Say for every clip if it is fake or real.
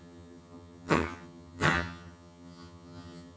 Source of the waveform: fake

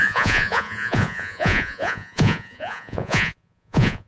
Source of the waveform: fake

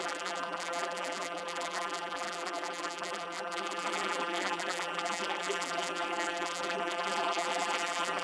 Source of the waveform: fake